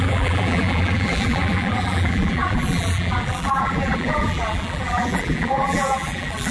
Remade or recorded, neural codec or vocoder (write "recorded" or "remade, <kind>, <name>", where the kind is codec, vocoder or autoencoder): remade, vocoder, BigVGAN v2